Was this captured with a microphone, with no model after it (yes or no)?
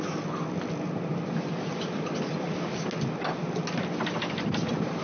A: yes